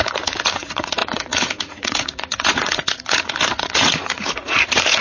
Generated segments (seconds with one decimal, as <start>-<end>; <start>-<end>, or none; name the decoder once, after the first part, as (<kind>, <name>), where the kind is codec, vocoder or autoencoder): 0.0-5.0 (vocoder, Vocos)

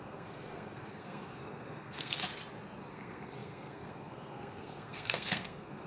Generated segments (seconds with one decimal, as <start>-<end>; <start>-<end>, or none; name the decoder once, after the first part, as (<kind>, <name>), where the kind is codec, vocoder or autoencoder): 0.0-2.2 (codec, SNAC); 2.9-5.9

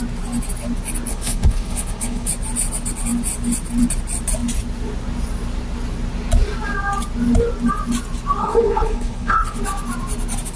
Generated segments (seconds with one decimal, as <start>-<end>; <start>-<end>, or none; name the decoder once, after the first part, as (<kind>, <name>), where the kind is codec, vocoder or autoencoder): 1.1-2.3 (codec, HILCodec); 8.4-9.6

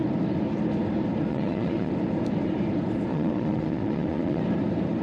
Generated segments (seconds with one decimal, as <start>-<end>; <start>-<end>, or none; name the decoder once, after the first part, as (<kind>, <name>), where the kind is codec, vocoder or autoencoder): 1.3-1.9 (vocoder, Vocos); 3.1-4.4

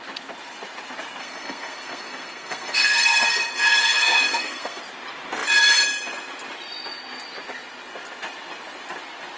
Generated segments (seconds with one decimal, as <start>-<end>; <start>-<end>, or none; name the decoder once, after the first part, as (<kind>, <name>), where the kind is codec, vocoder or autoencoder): 1.2-4.8 (codec, SNAC)

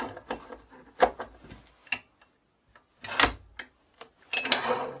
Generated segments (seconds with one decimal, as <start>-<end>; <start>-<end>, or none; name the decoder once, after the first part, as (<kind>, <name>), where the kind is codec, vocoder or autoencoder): none